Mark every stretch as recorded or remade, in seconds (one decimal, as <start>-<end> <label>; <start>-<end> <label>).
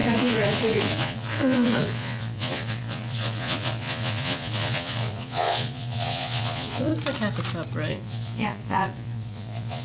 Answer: 0.0-6.9 remade; 6.9-7.9 recorded; 7.9-9.8 remade